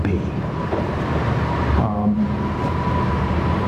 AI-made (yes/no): yes